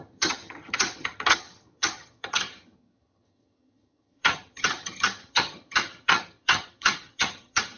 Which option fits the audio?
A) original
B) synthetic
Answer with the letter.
B